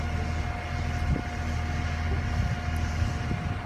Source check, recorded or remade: recorded